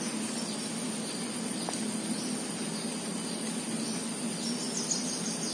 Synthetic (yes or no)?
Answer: no